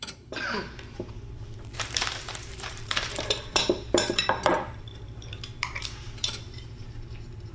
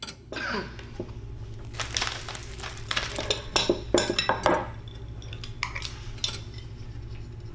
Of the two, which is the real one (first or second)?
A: second